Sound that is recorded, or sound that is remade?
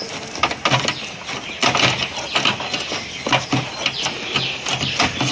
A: recorded